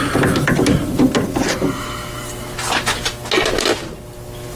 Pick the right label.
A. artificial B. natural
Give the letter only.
B